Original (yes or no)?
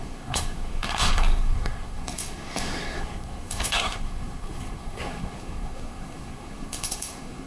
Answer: no